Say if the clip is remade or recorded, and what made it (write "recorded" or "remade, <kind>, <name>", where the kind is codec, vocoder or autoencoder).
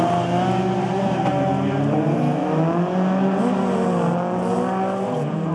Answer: recorded